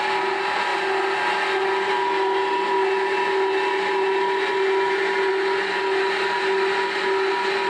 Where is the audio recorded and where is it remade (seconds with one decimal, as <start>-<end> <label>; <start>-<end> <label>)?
0.0-7.7 recorded